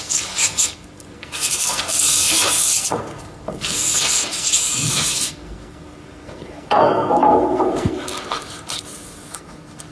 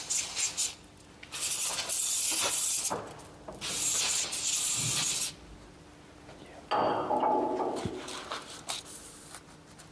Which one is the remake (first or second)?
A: first